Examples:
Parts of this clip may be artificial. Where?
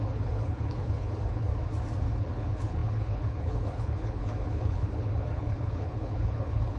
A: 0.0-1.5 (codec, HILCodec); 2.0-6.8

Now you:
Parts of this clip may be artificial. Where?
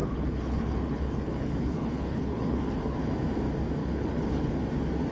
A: 0.0-3.1 (codec, HILCodec); 3.8-4.6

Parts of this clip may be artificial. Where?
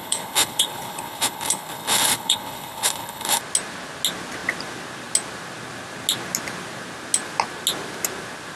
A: 0.0-3.4 (codec, HILCodec)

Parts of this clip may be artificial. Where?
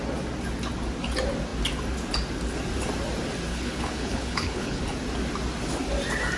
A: 3.5-4.8 (codec, HILCodec)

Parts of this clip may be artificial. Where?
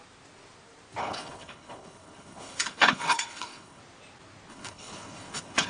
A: 1.0-3.8 (codec, HILCodec); 4.5-5.7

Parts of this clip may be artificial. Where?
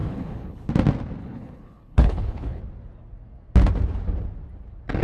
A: 0.0-0.7 (codec, HILCodec); 1.2-2.6